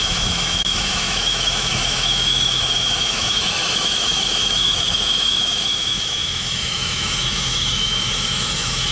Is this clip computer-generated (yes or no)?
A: yes